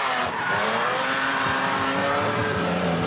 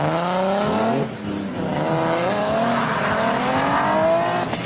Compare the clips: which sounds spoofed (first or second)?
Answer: first